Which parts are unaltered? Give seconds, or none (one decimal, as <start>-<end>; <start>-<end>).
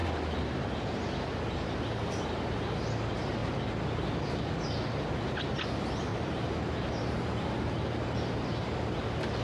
1.8-6.1; 6.9-9.4